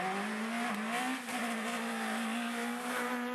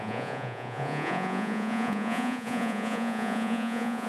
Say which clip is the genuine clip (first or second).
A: first